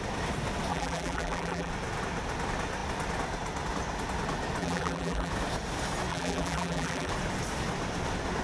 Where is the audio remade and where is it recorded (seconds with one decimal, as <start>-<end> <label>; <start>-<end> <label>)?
0.0-0.7 recorded; 0.7-1.7 remade; 1.7-4.6 recorded; 4.6-5.3 remade; 5.3-6.1 recorded; 6.1-7.1 remade; 7.1-8.4 recorded

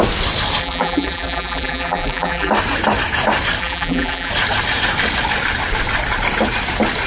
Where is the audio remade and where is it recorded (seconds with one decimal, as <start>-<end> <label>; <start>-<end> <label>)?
0.0-0.6 recorded; 0.6-2.5 remade; 2.5-3.6 recorded; 3.6-4.3 remade; 4.3-7.1 recorded

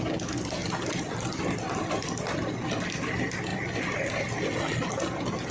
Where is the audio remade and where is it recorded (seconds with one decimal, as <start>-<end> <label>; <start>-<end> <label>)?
0.0-0.6 recorded; 0.6-2.8 remade; 2.8-3.5 recorded; 3.5-4.4 remade; 4.4-5.5 recorded

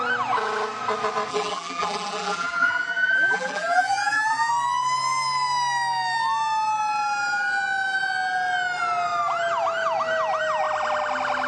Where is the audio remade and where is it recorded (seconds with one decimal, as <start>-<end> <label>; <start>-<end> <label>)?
0.0-1.3 recorded; 1.3-4.5 remade; 4.5-11.5 recorded

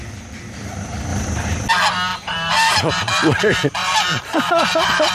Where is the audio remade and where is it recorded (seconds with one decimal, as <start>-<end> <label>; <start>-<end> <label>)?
0.0-2.1 recorded; 2.1-2.9 remade; 2.9-3.8 recorded; 3.8-5.1 remade

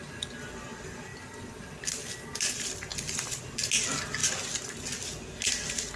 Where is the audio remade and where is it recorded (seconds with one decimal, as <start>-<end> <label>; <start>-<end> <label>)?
0.0-6.0 recorded

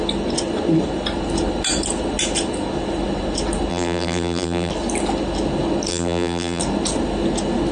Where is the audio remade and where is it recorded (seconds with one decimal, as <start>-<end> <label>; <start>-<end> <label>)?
0.0-3.7 recorded; 3.7-4.7 remade; 4.7-5.9 recorded; 5.9-6.6 remade; 6.6-7.7 recorded